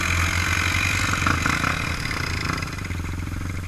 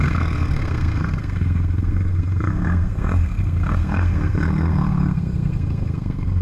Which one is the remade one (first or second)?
second